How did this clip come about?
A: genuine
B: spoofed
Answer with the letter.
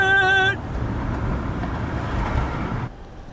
A